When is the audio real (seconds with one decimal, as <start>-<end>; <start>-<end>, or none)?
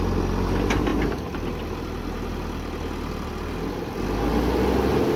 0.0-5.2